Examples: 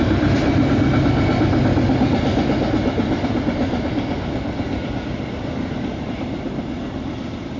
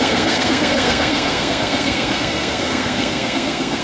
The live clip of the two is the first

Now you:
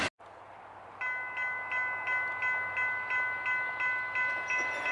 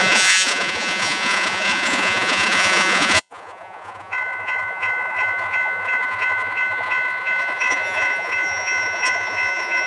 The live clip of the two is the first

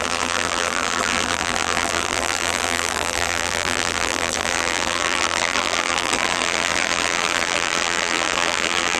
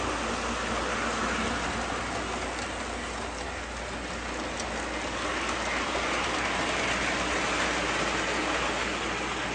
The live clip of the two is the second